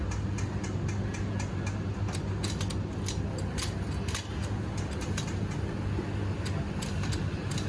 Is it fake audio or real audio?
real